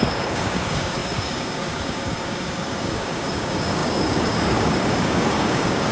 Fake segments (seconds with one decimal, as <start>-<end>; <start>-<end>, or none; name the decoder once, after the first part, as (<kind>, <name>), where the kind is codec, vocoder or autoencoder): 0.0-5.9 (codec, DAC)